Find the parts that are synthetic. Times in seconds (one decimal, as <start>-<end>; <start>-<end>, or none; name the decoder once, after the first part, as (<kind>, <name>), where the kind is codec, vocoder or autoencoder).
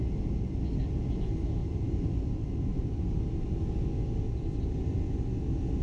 1.6-2.3 (vocoder, BigVGAN v2); 2.7-3.6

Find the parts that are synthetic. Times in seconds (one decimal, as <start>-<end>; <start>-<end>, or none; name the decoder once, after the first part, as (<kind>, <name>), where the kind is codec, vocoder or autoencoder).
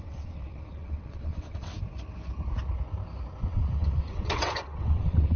0.0-1.7 (vocoder, WaveNeXt); 3.4-5.4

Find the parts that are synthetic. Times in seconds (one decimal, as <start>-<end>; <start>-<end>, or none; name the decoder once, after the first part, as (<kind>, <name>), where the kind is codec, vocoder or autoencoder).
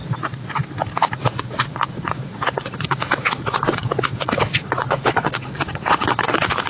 1.2-6.7 (vocoder, Vocos)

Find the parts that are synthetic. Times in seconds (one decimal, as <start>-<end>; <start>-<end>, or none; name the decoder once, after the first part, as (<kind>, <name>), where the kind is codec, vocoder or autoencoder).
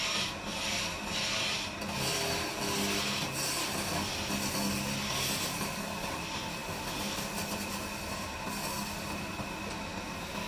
none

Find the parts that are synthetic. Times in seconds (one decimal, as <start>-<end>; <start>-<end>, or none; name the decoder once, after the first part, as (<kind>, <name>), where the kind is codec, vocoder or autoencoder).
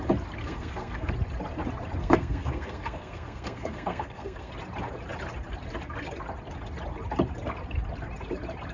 0.4-1.1 (codec, SNAC); 2.0-4.5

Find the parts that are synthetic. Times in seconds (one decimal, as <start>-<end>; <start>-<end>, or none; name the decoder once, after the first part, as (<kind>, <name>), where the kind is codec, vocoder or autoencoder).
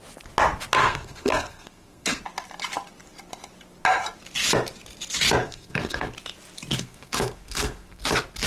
0.8-2.2 (codec, SNAC); 5.4-6.1; 6.7-8.0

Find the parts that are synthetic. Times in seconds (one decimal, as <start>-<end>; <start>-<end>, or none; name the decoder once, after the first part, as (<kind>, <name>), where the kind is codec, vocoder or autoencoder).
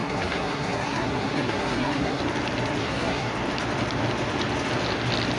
0.0-2.2 (codec, SNAC); 2.8-3.3